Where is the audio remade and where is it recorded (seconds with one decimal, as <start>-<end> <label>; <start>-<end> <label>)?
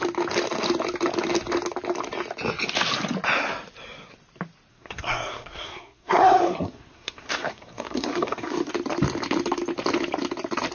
0.0-4.7 recorded; 4.7-8.7 remade; 8.7-10.7 recorded